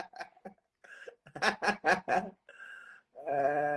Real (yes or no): yes